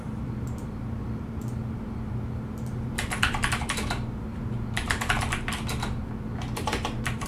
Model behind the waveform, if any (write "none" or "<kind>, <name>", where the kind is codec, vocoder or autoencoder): vocoder, BigVGAN v2